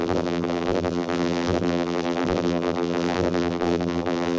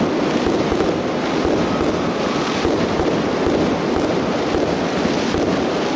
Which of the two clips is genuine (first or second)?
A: second